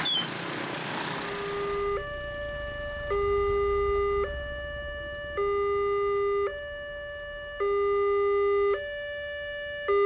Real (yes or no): yes